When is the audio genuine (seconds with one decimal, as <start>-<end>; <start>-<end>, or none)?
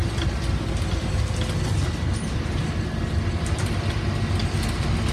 0.0-3.6; 4.4-5.1